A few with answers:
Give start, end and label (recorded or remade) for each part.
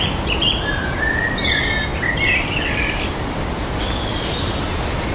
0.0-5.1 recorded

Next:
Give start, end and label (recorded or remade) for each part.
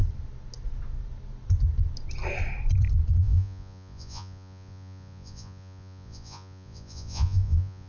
0.0-3.2 recorded; 3.2-7.9 remade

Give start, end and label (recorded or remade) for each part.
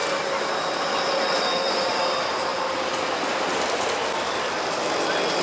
0.0-1.1 recorded; 1.1-5.4 remade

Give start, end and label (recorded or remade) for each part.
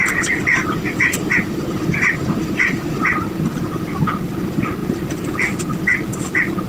0.0-4.8 recorded; 4.8-5.6 remade; 5.6-6.7 recorded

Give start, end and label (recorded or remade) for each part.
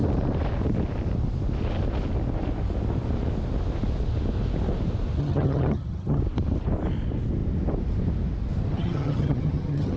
0.0-5.2 recorded; 5.2-6.2 remade; 6.2-8.7 recorded; 8.7-10.0 remade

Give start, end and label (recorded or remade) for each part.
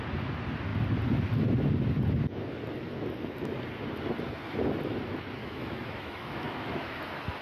0.0-5.4 recorded; 5.4-7.0 remade; 7.0-7.4 recorded